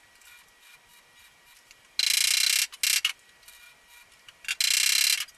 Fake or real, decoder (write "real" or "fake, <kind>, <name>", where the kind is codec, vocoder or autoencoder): real